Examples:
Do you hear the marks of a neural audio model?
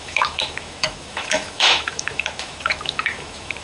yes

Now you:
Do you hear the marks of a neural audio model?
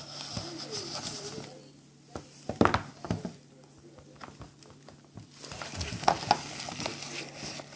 no